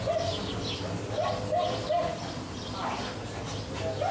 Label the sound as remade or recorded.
recorded